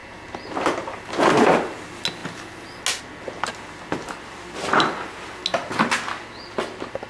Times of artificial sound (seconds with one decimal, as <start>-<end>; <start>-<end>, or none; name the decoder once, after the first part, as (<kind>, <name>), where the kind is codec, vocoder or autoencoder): none